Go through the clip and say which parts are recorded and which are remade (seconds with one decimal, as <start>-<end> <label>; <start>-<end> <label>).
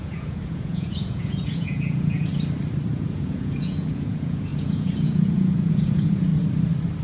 0.0-2.3 remade; 2.3-2.9 recorded; 2.9-6.3 remade; 6.3-7.0 recorded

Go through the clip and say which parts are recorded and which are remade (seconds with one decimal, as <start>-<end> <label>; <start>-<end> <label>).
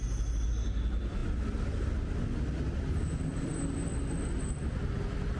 0.0-5.4 recorded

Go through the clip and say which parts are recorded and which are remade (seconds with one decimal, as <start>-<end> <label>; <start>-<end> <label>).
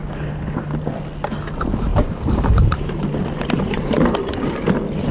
0.0-1.9 recorded; 1.9-4.6 remade; 4.6-5.1 recorded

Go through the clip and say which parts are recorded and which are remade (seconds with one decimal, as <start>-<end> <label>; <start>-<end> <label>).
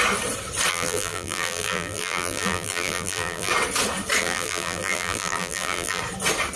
0.0-0.7 recorded; 0.7-3.5 remade; 3.5-4.2 recorded; 4.2-6.0 remade; 6.0-6.6 recorded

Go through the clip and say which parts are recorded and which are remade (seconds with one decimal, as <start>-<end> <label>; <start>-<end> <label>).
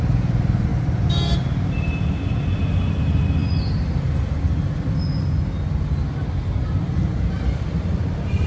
0.0-0.7 remade; 0.7-2.9 recorded; 2.9-3.4 remade; 3.4-7.3 recorded; 7.3-8.5 remade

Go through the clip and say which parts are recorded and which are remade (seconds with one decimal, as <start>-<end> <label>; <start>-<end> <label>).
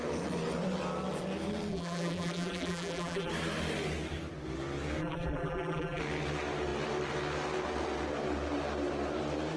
0.0-1.7 recorded; 1.7-3.3 remade; 3.3-5.0 recorded; 5.0-6.0 remade; 6.0-9.6 recorded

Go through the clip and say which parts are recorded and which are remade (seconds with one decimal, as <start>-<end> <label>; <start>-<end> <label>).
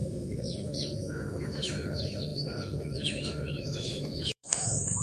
0.0-5.0 remade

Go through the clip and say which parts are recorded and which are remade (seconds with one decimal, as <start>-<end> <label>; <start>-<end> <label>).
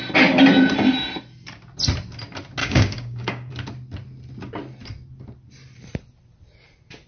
0.0-2.6 recorded; 2.6-3.5 remade; 3.5-7.1 recorded